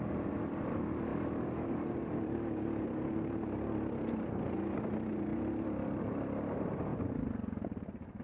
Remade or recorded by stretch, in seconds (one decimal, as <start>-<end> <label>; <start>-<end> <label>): 0.0-8.2 recorded